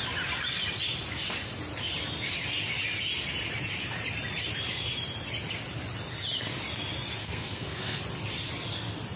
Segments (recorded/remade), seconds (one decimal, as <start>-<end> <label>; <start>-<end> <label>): 0.0-7.2 recorded; 7.2-8.0 remade; 8.0-9.2 recorded

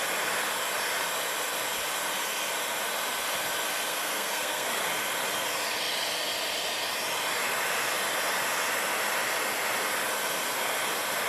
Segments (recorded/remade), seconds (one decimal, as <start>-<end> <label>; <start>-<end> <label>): 0.0-3.9 recorded; 3.9-4.8 remade; 4.8-11.3 recorded